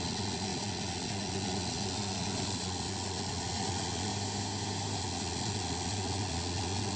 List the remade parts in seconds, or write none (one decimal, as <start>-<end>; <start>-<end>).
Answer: 0.0-4.1; 5.0-7.0